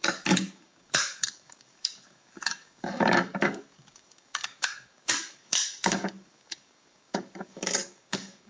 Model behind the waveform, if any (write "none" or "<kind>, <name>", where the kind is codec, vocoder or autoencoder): codec, DAC